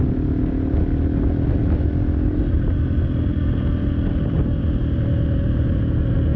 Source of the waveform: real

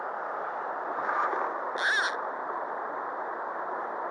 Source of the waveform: real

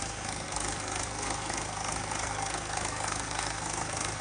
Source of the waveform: fake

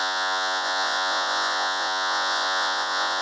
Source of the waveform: fake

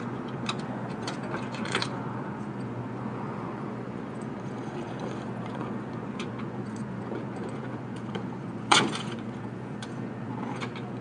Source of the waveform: fake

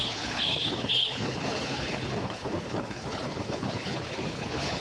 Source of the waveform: fake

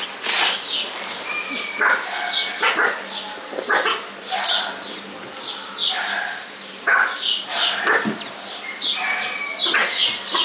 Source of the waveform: real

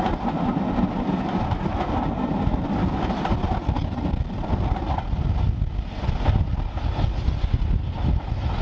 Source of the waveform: real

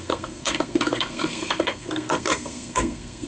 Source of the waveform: fake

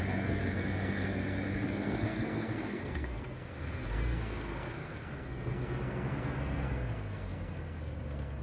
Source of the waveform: fake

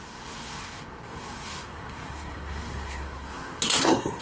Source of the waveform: fake